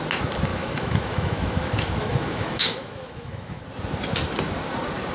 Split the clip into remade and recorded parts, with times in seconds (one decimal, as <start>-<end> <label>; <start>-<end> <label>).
0.0-0.5 recorded; 0.5-3.6 remade; 3.6-5.1 recorded